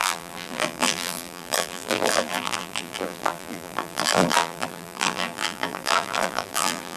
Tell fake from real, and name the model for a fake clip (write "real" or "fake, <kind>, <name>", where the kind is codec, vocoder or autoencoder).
fake, vocoder, BigVGAN v2